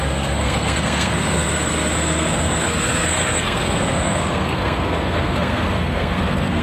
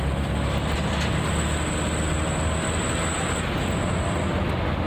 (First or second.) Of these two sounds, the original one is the second